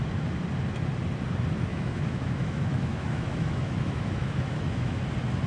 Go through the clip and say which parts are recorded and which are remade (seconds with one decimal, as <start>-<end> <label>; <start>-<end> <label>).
0.0-1.7 recorded; 1.7-5.0 remade; 5.0-5.5 recorded